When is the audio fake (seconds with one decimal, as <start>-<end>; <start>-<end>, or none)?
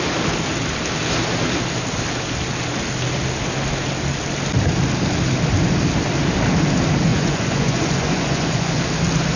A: 7.1-8.8